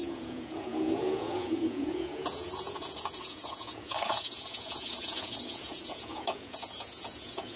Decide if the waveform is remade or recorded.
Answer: remade